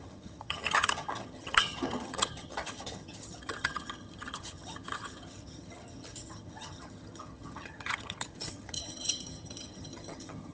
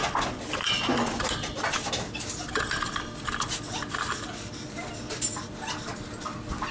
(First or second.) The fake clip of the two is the first